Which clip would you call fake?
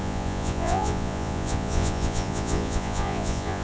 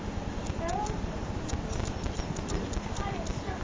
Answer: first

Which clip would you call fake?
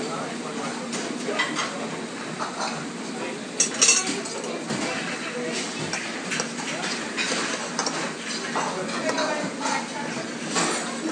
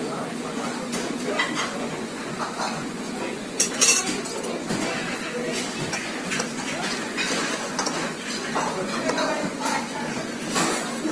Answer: second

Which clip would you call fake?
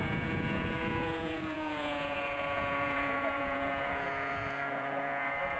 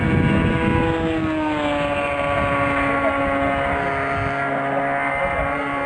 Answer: first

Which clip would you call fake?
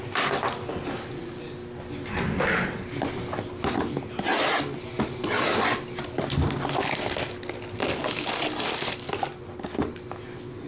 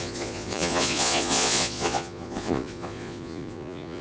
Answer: second